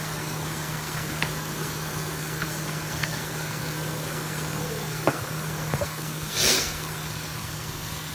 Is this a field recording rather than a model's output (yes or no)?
no